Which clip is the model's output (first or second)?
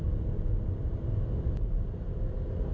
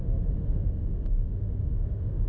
second